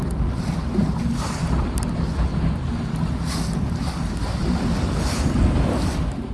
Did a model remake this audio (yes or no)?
no